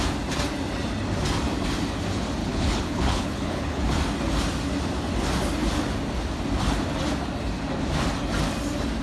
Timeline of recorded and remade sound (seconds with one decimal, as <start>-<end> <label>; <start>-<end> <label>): 0.0-2.4 recorded; 2.4-3.8 remade; 3.8-9.0 recorded